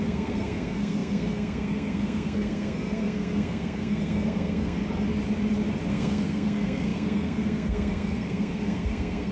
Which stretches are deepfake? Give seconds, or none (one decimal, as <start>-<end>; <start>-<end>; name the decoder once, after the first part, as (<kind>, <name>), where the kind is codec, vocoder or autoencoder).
0.0-4.8 (codec, SNAC); 5.9-9.3